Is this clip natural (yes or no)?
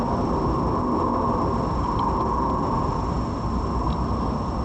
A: yes